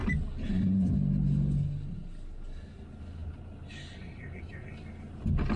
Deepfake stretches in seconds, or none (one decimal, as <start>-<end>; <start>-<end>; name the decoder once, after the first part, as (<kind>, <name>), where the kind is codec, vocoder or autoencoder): none